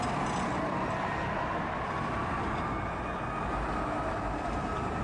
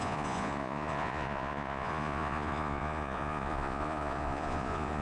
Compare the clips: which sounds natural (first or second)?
first